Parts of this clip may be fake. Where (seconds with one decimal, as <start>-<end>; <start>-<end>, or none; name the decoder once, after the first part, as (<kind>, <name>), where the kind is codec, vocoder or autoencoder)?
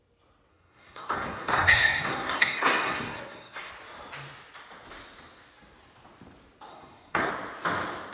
0.5-3.7 (codec, SNAC); 6.7-7.3